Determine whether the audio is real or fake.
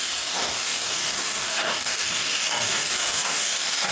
fake